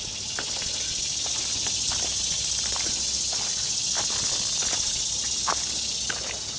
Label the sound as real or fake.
real